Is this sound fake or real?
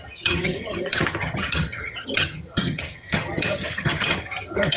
fake